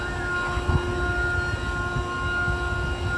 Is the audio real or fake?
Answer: real